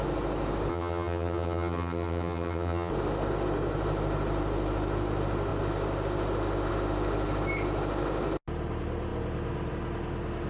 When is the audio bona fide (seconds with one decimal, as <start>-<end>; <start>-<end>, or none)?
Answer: 0.0-0.7; 2.9-10.5